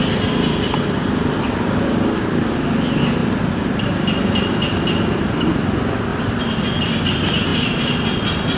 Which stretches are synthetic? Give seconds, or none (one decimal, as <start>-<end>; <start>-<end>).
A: 3.2-4.8; 6.1-6.9

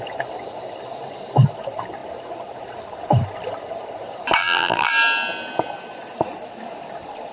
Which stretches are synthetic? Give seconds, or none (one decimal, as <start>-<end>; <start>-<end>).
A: 4.4-4.9

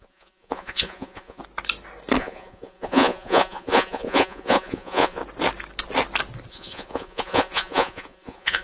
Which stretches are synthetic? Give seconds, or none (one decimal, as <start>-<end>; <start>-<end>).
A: 0.0-1.4; 2.2-5.2; 6.5-8.6

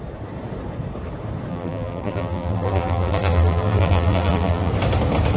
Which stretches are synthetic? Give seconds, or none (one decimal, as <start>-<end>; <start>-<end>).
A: 1.5-4.7

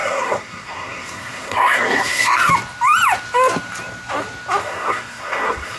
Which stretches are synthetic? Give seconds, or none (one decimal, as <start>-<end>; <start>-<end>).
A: 0.0-2.5; 4.6-5.8

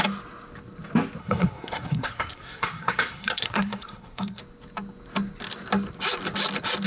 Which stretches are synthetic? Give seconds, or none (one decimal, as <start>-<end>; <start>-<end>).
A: 1.2-4.4